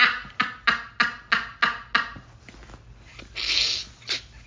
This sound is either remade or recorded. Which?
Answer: recorded